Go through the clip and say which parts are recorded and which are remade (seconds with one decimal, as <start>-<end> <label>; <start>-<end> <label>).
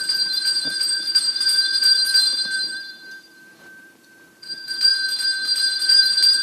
0.0-4.9 remade; 4.9-5.8 recorded; 5.8-6.4 remade